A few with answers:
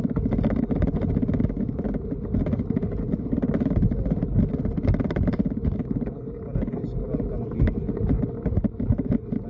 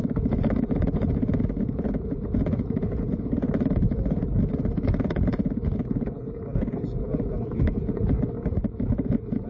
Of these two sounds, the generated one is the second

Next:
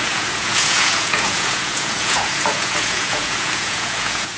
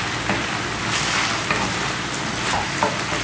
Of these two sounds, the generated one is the first